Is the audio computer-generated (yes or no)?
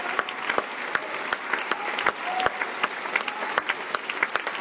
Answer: no